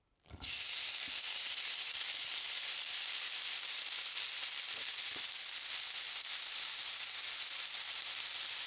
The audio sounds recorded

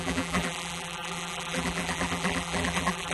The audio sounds remade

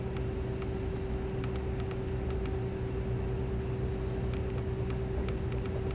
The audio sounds recorded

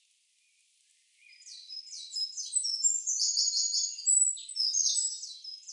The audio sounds recorded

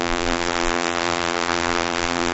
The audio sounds remade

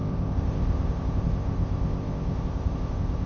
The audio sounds remade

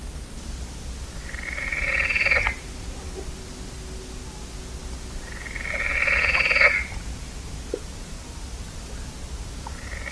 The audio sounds recorded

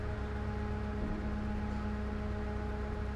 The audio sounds recorded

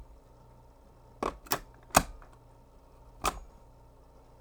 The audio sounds recorded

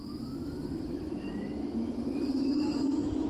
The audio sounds remade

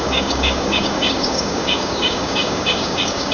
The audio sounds remade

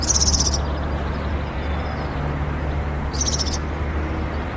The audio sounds recorded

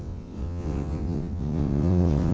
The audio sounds remade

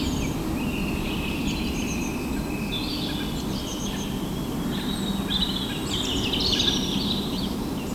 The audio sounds recorded